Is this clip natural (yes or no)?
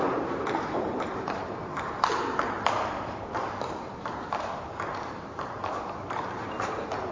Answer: no